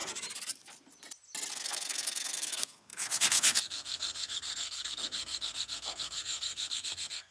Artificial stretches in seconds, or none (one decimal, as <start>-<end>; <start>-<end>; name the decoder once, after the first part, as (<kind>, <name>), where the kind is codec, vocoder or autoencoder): 1.5-7.3 (codec, SNAC)